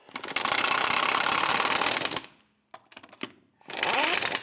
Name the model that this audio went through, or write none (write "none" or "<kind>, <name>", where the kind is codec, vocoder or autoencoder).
none